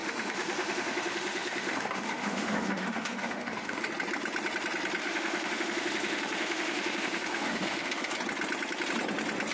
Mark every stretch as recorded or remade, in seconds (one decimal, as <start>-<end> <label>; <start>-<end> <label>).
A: 0.0-3.8 remade; 3.8-5.0 recorded; 5.0-8.1 remade; 8.1-9.5 recorded